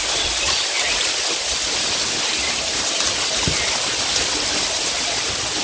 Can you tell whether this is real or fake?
real